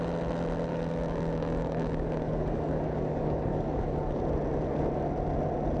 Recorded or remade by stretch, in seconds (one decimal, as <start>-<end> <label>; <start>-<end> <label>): 0.0-0.7 recorded; 0.7-4.2 remade; 4.2-5.8 recorded